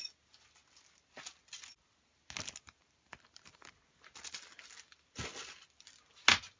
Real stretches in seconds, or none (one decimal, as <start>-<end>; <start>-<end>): 0.0-6.6